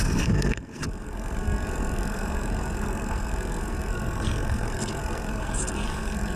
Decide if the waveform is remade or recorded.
remade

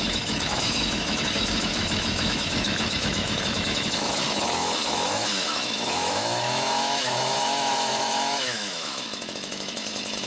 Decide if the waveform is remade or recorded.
remade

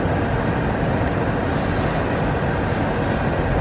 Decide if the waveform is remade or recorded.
recorded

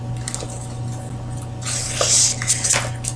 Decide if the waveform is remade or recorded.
recorded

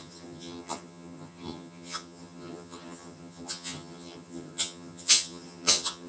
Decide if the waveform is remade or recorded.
remade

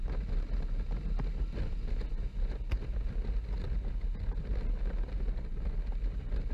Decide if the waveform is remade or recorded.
recorded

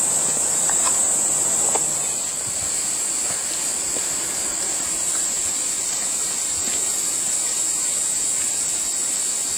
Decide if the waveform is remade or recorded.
recorded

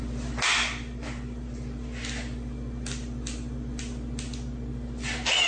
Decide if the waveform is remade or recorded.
recorded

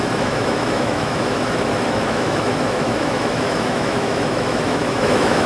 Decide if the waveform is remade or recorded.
remade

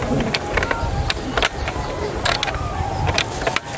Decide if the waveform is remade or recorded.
recorded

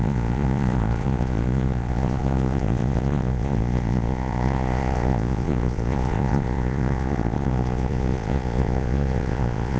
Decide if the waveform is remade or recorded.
remade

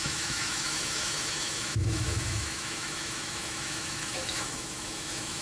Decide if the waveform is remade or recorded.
remade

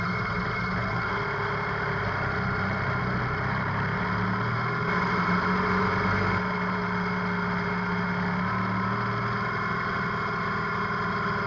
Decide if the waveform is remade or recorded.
recorded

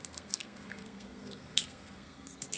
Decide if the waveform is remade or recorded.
remade